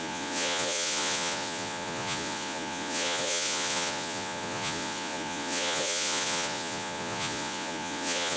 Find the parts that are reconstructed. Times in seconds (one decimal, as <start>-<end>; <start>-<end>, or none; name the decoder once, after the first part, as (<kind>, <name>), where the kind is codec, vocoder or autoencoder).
0.0-8.4 (vocoder, Vocos)